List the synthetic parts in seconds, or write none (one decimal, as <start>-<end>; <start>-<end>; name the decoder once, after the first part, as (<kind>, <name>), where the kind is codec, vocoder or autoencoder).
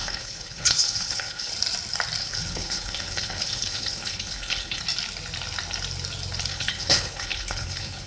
0.0-1.5 (codec, HILCodec); 2.2-4.8; 6.5-8.1